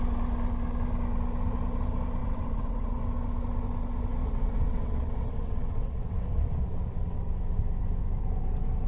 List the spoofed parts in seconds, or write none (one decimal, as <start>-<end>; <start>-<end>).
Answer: 2.2-3.0; 4.2-7.3